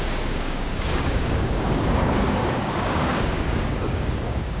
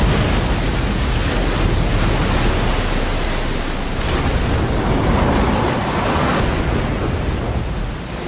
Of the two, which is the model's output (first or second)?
first